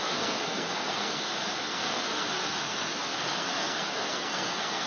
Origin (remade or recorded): remade